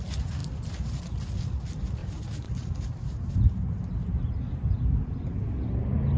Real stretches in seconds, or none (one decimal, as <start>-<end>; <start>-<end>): 0.0-2.0; 3.8-6.2